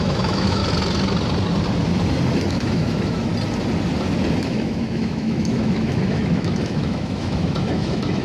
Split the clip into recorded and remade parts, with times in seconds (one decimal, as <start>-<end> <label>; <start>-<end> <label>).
0.0-0.6 remade; 0.6-2.5 recorded; 2.5-3.3 remade; 3.3-4.4 recorded; 4.4-8.2 remade